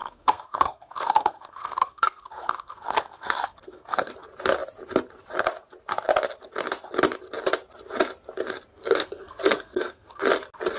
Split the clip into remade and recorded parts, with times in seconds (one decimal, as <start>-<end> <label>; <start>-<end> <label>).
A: 0.0-4.1 remade; 4.1-8.7 recorded; 8.7-10.2 remade; 10.2-10.8 recorded